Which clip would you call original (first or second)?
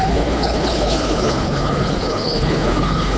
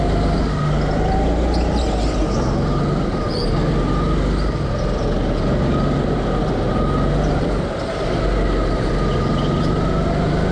second